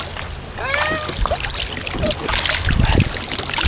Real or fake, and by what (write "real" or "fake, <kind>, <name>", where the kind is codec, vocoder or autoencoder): real